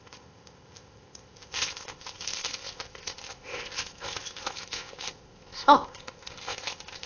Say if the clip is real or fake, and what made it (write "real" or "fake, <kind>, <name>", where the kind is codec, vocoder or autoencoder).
fake, codec, ZipCodec